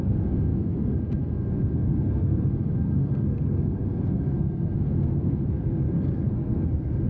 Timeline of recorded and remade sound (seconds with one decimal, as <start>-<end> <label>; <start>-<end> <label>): 0.0-7.1 remade